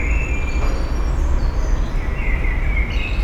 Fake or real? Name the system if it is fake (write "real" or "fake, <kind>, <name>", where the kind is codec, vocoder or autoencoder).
real